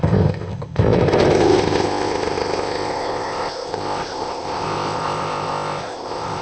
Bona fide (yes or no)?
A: no